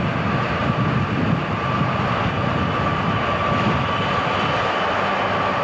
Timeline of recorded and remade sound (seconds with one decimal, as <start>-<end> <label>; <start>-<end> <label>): 0.0-5.6 recorded